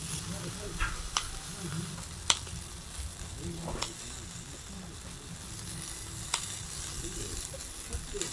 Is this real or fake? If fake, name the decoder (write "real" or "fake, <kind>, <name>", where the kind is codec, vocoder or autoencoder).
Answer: real